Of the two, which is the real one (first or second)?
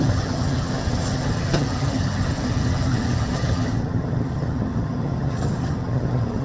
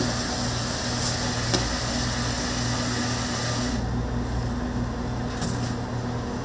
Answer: second